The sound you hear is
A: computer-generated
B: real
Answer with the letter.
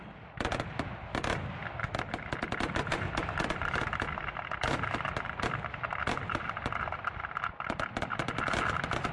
B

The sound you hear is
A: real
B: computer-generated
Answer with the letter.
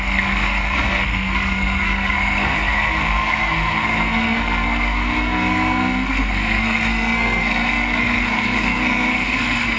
B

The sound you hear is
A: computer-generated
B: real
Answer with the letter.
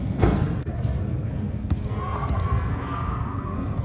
A